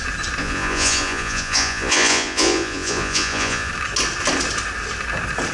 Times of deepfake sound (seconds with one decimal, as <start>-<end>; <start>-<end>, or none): 0.4-3.7